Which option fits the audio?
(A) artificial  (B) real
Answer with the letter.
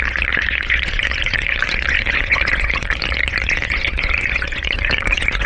A